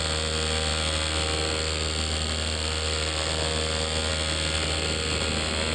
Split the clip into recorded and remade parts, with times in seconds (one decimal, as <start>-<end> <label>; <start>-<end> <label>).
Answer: 0.0-5.7 recorded

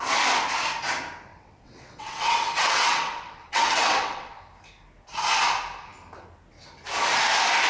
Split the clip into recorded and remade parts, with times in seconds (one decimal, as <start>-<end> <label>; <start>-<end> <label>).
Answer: 0.0-1.3 recorded; 1.3-4.4 remade; 4.4-7.7 recorded

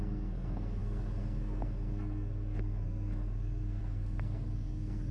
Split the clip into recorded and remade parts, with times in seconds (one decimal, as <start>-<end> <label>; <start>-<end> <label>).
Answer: 0.0-5.1 remade

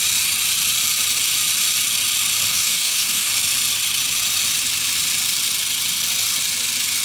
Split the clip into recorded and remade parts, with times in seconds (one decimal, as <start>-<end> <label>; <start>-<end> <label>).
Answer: 0.0-2.5 recorded; 2.5-3.3 remade; 3.3-7.0 recorded

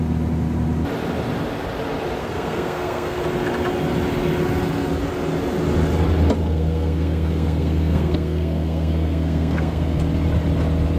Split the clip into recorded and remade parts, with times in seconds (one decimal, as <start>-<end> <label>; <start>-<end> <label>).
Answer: 0.0-2.2 recorded; 2.2-3.2 remade; 3.2-6.4 recorded; 6.4-10.0 remade; 10.0-11.0 recorded

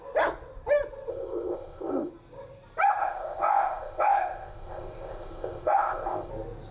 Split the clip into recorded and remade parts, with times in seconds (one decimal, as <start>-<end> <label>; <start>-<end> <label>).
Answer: 0.0-1.1 recorded; 1.1-2.1 remade; 2.1-3.0 recorded; 3.0-6.3 remade; 6.3-6.7 recorded